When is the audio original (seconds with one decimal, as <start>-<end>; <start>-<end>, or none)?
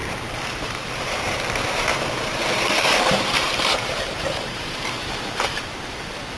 none